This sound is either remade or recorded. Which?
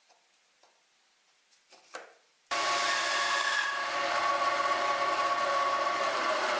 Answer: remade